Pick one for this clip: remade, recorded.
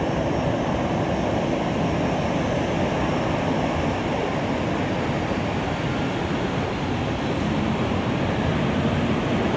recorded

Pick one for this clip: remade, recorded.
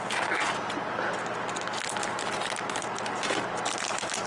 recorded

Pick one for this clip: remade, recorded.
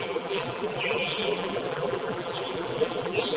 remade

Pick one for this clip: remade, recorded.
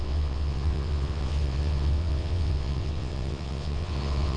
remade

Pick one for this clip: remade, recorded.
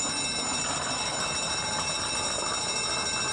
recorded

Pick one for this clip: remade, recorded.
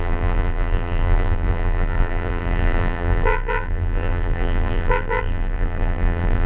remade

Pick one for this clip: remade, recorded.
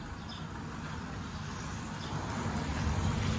recorded